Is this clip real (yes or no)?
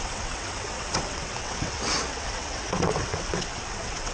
no